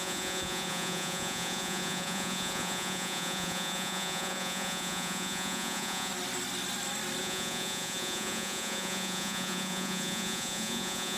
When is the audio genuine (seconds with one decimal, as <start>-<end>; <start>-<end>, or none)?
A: 6.1-7.2